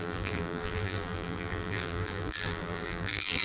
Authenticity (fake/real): fake